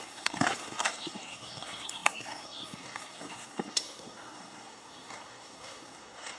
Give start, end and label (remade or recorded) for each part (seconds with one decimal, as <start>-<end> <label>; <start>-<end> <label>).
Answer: 0.0-6.4 remade